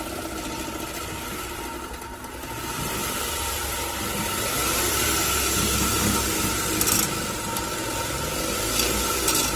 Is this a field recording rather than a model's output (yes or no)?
yes